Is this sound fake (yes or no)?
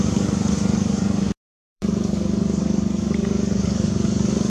yes